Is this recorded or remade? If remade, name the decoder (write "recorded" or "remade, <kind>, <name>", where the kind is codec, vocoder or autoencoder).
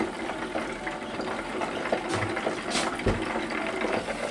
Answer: recorded